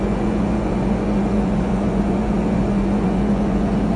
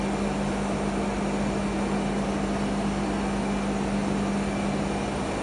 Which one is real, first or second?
second